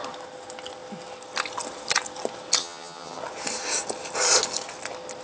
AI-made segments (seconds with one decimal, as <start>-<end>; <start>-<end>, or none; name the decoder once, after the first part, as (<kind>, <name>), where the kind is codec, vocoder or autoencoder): 2.6-3.2 (vocoder, HiFi-GAN)